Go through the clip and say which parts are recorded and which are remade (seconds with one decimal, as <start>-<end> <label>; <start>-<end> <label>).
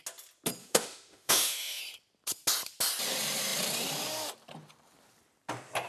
0.0-0.6 recorded; 0.6-1.8 remade; 1.8-5.9 recorded